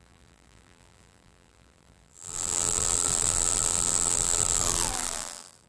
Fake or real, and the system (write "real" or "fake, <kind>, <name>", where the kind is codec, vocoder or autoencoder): fake, vocoder, BigVGAN v2